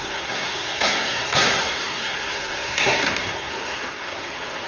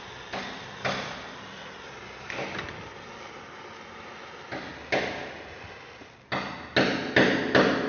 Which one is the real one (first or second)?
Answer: second